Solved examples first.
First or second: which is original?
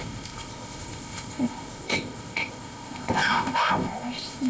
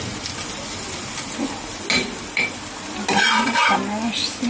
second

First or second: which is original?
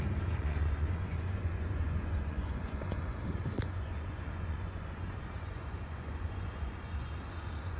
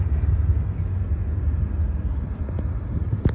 second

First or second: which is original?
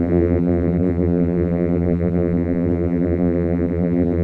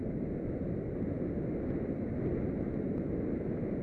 second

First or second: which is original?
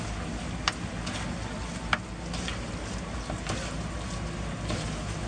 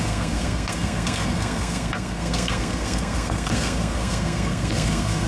first